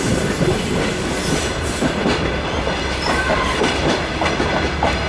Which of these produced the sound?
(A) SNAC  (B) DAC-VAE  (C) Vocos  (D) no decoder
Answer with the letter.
D